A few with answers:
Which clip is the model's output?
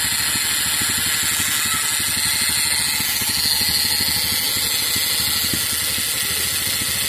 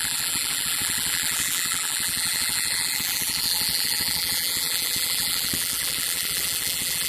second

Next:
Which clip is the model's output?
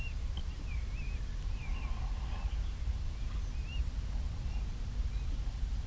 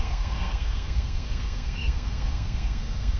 second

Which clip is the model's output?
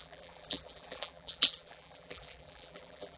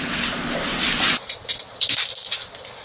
first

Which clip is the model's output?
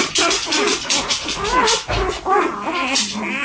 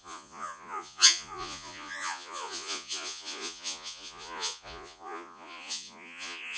second